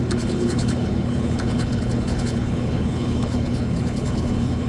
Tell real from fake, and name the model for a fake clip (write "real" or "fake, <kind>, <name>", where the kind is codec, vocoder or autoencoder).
fake, codec, HILCodec